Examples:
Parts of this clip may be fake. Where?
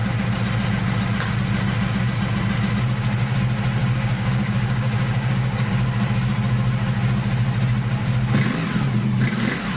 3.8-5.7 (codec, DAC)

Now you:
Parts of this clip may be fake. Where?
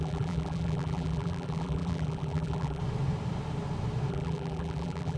0.0-2.8 (vocoder, BigVGAN v2); 4.1-5.2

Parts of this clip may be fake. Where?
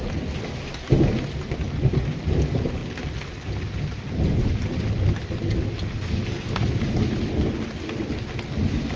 none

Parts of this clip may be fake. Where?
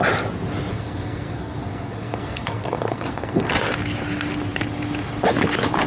0.7-3.5 (codec, SNAC)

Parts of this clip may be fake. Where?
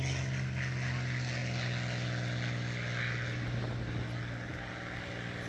none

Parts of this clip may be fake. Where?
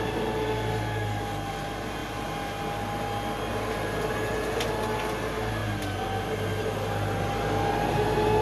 3.5-4.1 (vocoder, BigVGAN v2)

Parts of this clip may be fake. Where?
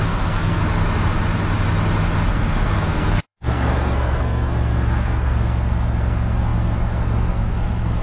0.0-0.6 (codec, SNAC); 2.3-8.0